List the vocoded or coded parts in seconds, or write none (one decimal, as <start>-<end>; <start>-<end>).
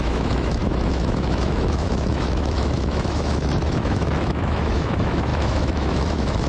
0.0-6.5